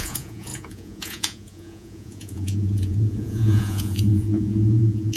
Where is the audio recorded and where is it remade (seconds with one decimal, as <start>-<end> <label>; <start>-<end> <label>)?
0.0-5.2 remade

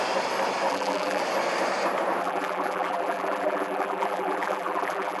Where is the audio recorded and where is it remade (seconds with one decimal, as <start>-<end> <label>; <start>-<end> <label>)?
0.0-0.7 recorded; 0.7-1.2 remade; 1.2-2.2 recorded; 2.2-5.2 remade